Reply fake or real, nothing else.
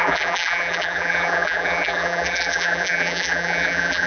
fake